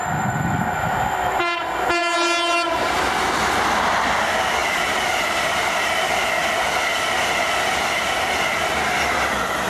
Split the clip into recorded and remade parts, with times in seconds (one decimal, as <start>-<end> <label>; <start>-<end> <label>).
0.0-0.6 remade; 0.6-9.7 recorded

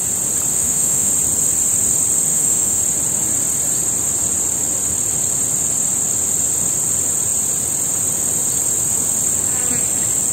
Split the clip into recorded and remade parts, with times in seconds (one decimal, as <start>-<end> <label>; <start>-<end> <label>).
0.0-0.5 recorded; 0.5-1.1 remade; 1.1-2.3 recorded; 2.3-2.8 remade; 2.8-10.3 recorded